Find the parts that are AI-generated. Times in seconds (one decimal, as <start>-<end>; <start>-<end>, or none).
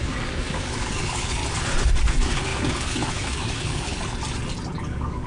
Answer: 0.0-1.4; 2.1-3.9; 4.8-5.3